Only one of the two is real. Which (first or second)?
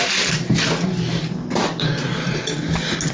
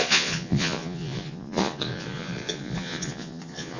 first